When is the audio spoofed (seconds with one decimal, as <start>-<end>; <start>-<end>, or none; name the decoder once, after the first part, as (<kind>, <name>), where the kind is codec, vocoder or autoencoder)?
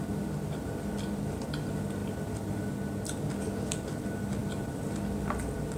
none